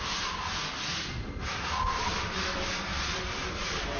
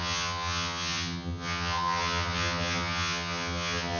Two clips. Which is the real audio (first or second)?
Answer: first